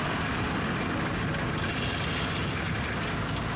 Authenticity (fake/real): real